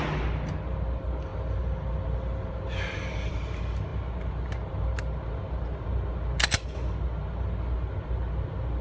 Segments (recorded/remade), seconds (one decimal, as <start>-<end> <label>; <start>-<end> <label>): 0.0-8.8 recorded